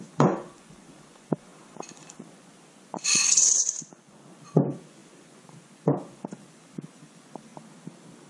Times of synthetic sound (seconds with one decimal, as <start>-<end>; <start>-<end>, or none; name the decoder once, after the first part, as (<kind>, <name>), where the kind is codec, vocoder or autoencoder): 0.0-7.5 (vocoder, Vocos)